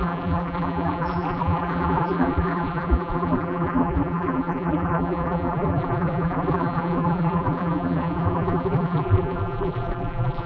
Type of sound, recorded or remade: remade